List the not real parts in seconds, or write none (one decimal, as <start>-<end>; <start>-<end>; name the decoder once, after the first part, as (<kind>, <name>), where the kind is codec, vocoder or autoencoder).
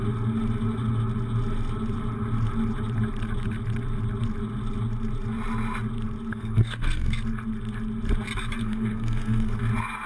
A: 6.3-7.2 (codec, SNAC); 8.6-9.6